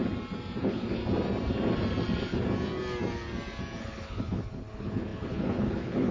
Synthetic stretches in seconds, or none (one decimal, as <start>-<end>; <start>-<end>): 0.6-1.0; 3.8-6.1